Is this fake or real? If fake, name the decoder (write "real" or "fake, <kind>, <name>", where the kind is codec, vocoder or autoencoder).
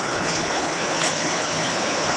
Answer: fake, codec, HILCodec